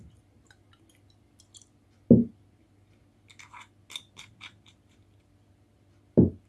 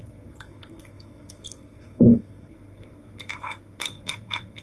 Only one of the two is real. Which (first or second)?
first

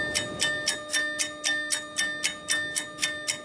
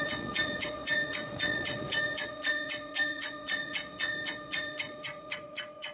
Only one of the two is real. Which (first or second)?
first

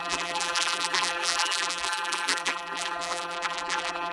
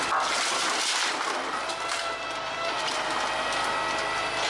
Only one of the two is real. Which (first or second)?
second